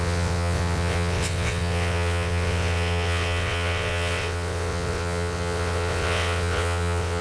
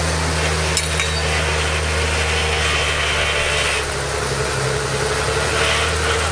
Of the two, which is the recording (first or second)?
second